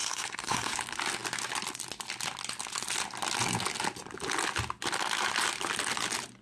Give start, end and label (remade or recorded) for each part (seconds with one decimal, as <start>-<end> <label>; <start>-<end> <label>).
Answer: 0.0-0.7 remade; 0.7-6.4 recorded